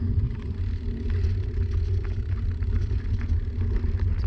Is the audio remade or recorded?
recorded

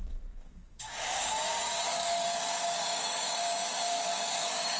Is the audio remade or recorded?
remade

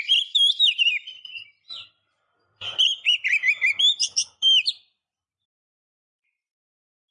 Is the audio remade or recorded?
remade